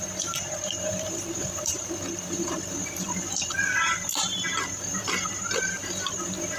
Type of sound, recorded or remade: remade